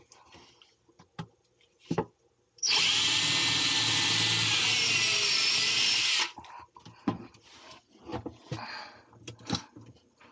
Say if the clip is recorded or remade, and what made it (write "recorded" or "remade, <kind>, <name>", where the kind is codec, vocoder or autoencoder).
recorded